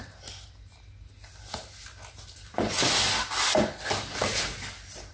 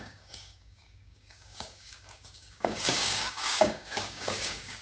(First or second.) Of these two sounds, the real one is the first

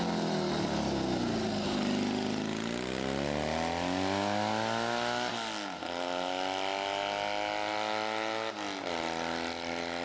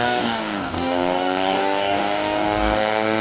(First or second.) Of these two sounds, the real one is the first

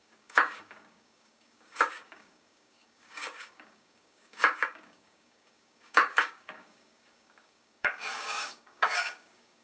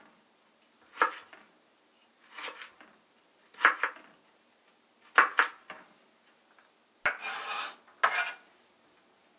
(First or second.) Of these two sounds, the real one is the second